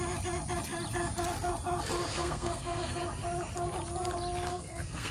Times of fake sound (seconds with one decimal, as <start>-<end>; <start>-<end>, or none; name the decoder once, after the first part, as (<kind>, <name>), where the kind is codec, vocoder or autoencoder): 2.1-3.0 (codec, SNAC); 4.5-5.1